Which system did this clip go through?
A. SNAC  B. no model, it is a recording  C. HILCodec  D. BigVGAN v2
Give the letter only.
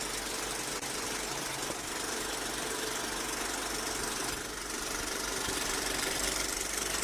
B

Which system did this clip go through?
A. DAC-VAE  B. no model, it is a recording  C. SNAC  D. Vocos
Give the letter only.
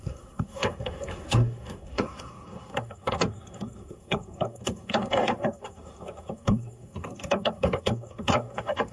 C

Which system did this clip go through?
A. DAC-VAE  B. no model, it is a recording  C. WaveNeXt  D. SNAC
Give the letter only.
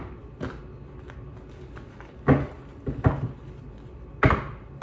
B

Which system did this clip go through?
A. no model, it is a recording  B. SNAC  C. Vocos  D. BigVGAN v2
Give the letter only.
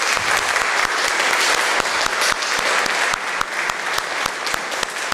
A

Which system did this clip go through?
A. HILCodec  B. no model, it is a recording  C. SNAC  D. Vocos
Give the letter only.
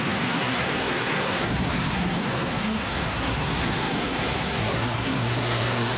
C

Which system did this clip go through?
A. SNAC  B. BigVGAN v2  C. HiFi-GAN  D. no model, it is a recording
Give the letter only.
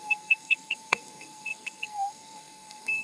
A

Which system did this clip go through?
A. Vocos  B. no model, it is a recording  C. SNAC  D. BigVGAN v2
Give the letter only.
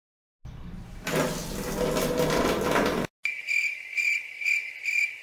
B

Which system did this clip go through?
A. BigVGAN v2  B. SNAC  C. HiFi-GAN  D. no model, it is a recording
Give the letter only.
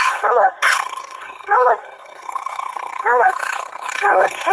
B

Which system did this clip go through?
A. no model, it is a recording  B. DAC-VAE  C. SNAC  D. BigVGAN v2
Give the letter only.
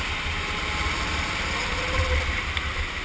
A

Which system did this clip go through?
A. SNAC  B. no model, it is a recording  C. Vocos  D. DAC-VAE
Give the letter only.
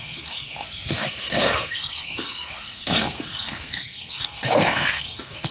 A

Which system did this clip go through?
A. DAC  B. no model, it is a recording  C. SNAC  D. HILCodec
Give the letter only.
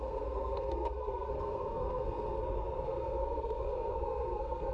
C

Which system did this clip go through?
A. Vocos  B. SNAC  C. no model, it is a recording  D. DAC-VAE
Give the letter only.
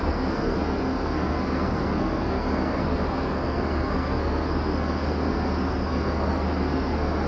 B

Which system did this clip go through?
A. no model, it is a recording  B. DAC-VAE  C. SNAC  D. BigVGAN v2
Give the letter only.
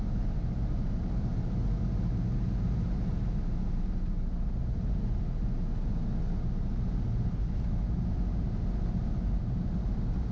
A